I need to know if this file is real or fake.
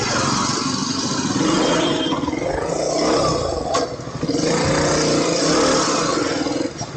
real